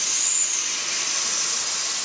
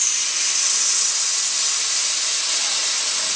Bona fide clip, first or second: second